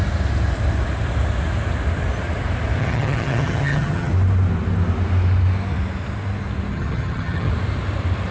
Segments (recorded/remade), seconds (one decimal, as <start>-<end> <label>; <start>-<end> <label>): 0.0-2.8 recorded; 2.8-4.1 remade; 4.1-6.7 recorded; 6.7-7.5 remade; 7.5-8.3 recorded